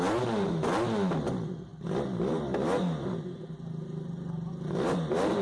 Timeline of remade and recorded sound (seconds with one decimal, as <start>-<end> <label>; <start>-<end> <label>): 0.0-5.4 recorded